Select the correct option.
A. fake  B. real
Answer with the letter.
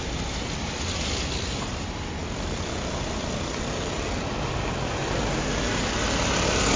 B